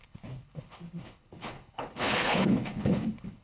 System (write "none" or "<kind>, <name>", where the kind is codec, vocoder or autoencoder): codec, HILCodec